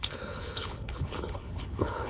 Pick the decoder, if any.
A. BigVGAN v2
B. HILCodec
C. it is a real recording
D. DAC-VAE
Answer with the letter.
B